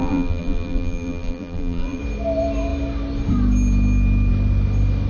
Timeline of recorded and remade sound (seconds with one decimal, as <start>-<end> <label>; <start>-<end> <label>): 0.0-2.0 remade; 2.0-5.1 recorded

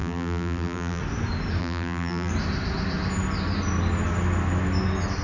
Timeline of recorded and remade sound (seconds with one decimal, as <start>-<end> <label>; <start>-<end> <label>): 0.0-1.0 remade; 1.0-1.6 recorded; 1.6-2.3 remade; 2.3-5.2 recorded

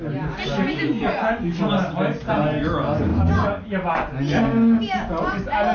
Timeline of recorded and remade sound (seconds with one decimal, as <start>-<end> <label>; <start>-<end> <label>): 0.0-5.7 recorded

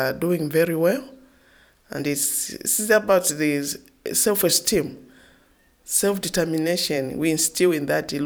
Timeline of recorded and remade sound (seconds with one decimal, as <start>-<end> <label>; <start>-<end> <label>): 0.0-0.9 recorded; 0.9-2.0 remade; 2.0-2.5 recorded; 2.5-3.3 remade; 3.3-4.5 recorded; 4.5-8.3 remade

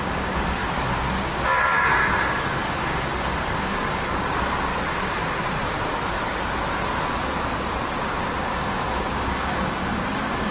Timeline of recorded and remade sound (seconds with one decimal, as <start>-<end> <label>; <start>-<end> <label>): 0.0-0.6 remade; 0.6-1.2 recorded; 1.2-4.7 remade; 4.7-8.0 recorded; 8.0-10.5 remade